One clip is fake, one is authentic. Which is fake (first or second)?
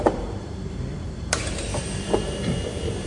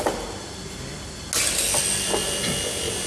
first